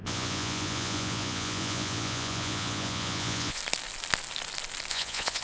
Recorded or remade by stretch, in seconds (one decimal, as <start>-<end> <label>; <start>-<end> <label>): 0.0-3.6 remade; 3.6-4.9 recorded; 4.9-5.4 remade